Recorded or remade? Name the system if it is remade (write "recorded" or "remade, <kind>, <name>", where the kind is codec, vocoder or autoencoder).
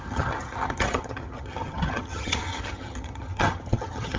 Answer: remade, vocoder, HiFi-GAN